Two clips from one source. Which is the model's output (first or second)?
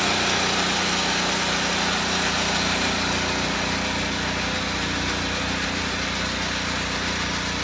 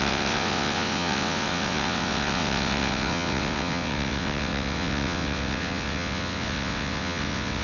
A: second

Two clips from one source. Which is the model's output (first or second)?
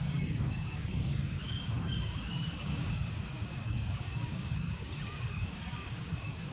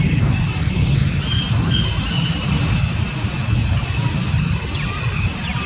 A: first